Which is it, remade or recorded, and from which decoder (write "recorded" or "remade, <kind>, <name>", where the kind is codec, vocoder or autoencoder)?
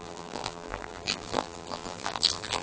remade, vocoder, BigVGAN v2